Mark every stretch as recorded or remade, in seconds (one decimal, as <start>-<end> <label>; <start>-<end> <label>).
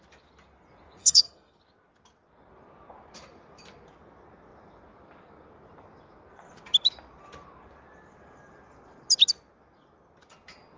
0.0-1.0 recorded; 1.0-1.6 remade; 1.6-10.8 recorded